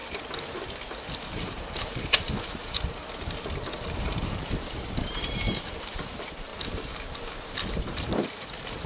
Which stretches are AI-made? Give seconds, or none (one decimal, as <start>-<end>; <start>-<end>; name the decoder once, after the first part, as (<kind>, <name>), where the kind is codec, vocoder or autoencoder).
1.4-3.0 (vocoder, BigVGAN v2); 4.0-6.5; 7.8-8.9